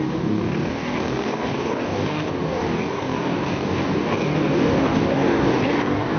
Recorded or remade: remade